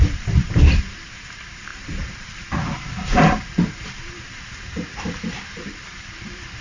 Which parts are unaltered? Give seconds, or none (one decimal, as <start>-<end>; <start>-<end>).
none